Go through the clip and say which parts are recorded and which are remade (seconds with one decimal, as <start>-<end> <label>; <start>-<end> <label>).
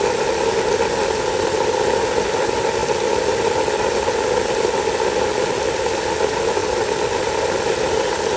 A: 0.0-8.4 recorded